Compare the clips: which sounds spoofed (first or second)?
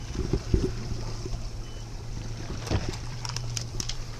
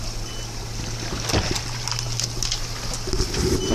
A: first